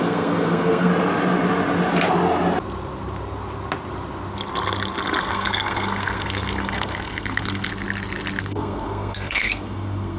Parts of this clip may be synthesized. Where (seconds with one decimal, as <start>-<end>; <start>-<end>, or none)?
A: 0.0-0.9; 5.2-7.7; 8.4-10.2